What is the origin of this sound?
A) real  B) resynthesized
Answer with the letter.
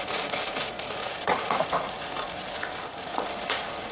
B